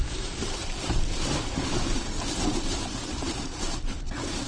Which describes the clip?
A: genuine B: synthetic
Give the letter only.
B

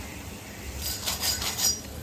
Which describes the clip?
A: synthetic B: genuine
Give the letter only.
A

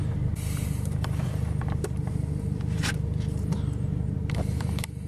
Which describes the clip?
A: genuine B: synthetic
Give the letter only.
B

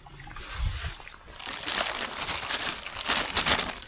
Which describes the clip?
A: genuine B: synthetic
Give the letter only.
A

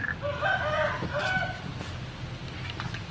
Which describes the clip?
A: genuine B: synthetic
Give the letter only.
A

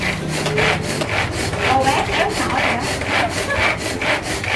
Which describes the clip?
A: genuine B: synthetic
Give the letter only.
A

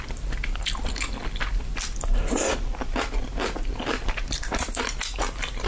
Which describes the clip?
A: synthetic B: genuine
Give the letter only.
B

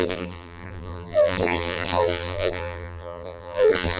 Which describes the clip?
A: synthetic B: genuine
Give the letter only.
A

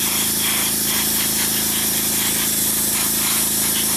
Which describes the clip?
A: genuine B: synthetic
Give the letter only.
A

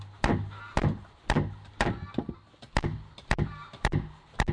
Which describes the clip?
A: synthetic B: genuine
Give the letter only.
B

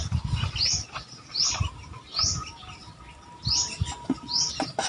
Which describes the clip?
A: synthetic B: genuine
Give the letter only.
B